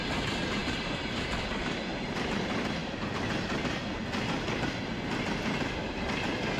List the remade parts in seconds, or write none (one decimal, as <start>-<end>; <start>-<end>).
0.6-1.4; 1.9-2.4